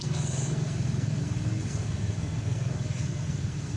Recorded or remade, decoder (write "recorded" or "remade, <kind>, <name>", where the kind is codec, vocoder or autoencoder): remade, codec, SNAC